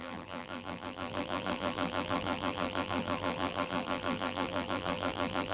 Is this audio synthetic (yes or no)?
yes